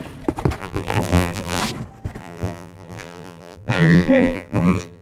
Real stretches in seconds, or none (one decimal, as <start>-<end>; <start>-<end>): 0.0-0.6; 1.6-2.2